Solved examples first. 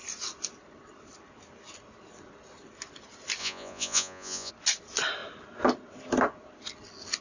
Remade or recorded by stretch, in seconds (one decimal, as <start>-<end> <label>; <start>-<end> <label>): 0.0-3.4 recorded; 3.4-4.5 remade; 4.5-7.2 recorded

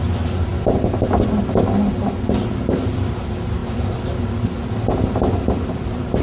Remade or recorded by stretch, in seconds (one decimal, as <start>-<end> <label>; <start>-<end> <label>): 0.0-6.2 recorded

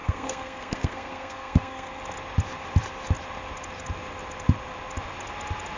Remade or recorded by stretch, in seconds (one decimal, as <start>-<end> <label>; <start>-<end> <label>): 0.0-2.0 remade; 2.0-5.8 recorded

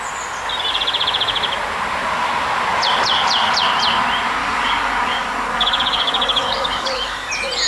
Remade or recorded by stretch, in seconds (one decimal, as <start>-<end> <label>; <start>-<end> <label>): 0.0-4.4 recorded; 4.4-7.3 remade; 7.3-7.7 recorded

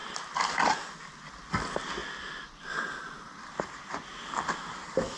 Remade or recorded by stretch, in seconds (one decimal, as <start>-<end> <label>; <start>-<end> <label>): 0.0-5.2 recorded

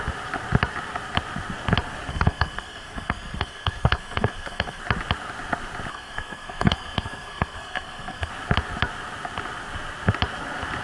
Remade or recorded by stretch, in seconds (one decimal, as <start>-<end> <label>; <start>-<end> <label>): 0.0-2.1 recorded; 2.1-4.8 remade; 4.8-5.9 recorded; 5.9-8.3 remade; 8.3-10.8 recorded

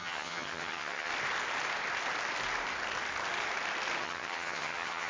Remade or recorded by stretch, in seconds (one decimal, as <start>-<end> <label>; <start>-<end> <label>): 0.0-1.1 remade; 1.1-4.0 recorded; 4.0-5.1 remade